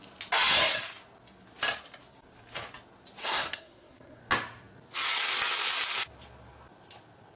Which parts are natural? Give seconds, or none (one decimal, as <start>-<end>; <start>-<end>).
0.0-3.2; 4.2-7.4